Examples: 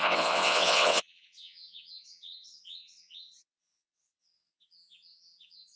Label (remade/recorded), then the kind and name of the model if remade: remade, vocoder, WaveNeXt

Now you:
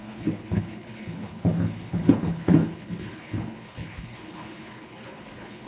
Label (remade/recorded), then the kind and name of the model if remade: remade, codec, HILCodec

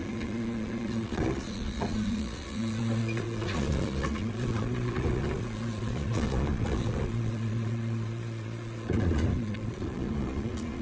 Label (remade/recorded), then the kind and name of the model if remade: remade, vocoder, Vocos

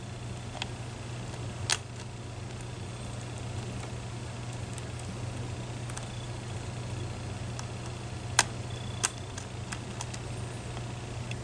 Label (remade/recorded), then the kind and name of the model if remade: recorded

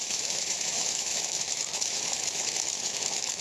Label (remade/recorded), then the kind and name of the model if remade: remade, autoencoder, DAC-VAE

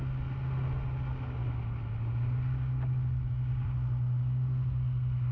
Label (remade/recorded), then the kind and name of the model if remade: recorded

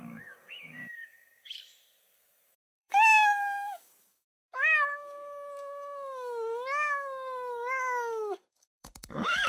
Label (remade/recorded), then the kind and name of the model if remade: remade, codec, DAC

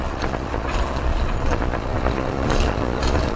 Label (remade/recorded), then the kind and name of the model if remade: remade, vocoder, Vocos